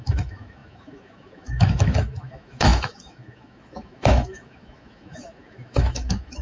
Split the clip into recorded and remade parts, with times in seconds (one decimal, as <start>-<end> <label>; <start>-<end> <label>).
0.0-6.4 remade